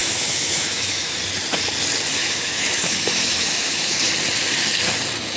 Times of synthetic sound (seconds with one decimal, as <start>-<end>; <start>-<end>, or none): 0.0-1.2; 2.2-4.1